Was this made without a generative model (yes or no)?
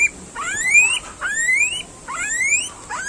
yes